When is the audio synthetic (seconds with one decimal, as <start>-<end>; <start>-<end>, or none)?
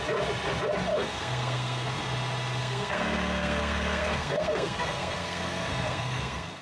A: 0.9-1.9; 2.6-6.6